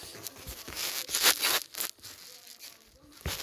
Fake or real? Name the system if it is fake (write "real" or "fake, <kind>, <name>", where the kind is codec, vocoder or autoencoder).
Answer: real